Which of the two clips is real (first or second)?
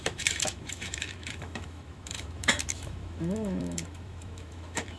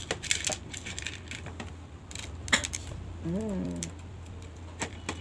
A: second